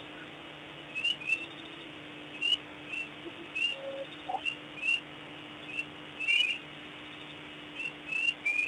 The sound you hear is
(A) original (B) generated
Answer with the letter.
A